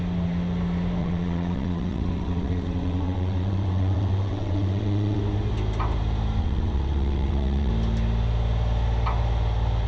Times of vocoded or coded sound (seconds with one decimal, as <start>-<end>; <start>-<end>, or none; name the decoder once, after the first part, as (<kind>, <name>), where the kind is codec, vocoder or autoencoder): 1.0-5.2 (vocoder, WaveNeXt); 6.4-7.7